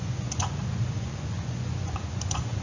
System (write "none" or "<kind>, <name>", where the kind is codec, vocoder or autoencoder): vocoder, Vocos